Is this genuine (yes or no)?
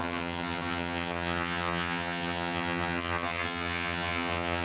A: no